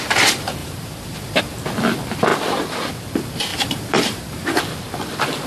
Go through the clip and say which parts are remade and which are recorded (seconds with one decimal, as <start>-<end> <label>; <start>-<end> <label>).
0.0-0.6 recorded; 0.6-1.4 remade; 1.4-3.5 recorded; 3.5-4.6 remade; 4.6-5.5 recorded